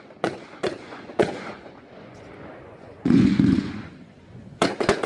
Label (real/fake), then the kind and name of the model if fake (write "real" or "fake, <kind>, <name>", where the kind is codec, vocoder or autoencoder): fake, vocoder, Vocos